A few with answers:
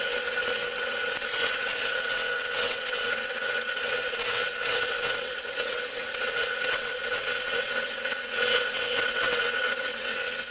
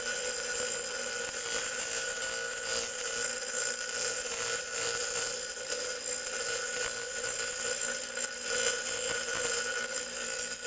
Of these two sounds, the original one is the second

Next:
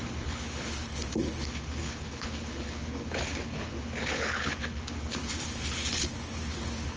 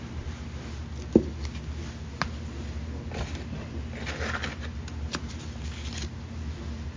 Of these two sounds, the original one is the second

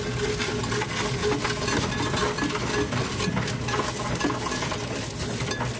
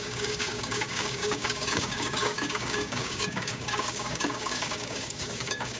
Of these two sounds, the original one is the first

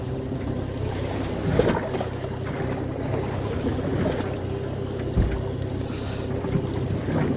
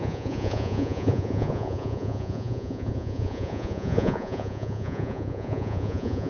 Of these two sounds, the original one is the first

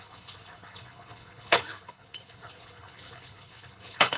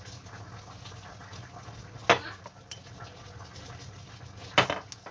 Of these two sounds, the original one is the second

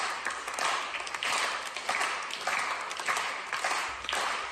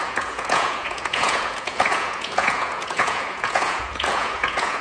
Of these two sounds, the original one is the first